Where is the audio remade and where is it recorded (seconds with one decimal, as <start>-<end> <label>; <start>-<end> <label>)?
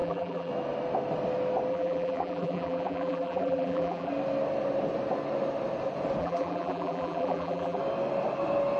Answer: 0.0-0.5 remade; 0.5-1.7 recorded; 1.7-4.1 remade; 4.1-6.2 recorded; 6.2-7.8 remade; 7.8-8.8 recorded